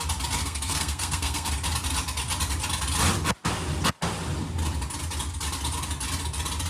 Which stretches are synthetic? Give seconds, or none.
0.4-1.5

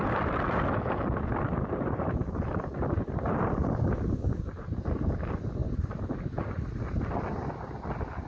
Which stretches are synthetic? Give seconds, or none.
5.6-6.4

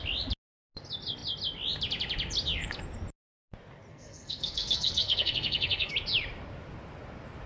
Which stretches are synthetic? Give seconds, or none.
3.9-5.9